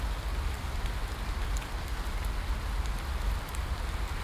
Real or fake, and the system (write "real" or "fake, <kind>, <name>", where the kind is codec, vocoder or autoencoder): real